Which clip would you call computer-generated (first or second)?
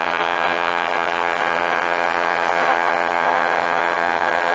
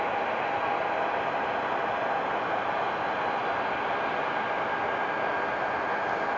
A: first